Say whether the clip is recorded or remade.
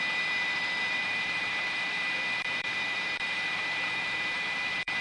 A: remade